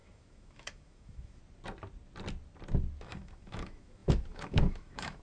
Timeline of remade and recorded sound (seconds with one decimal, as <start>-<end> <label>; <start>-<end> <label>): 0.0-1.4 remade; 1.4-3.0 recorded; 3.0-5.2 remade